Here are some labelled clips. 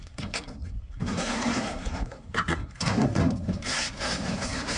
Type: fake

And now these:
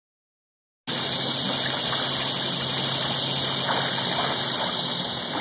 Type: real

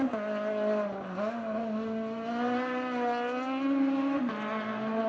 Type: real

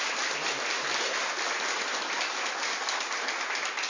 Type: real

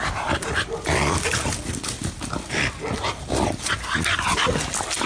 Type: real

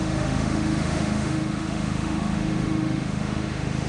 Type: fake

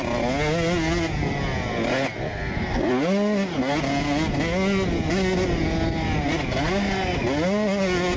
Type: real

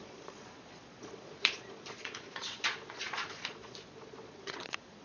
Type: fake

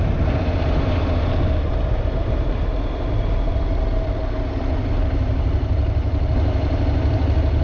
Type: real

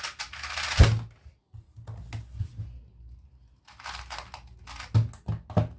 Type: real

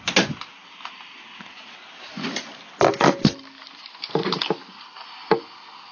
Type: real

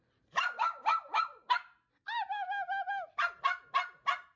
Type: real